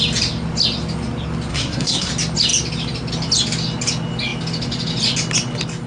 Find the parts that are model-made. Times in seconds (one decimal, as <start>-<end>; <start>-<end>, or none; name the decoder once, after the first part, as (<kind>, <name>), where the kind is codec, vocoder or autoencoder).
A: 1.5-2.1 (codec, SNAC)